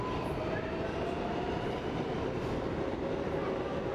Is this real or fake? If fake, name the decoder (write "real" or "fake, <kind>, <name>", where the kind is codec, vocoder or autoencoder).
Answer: real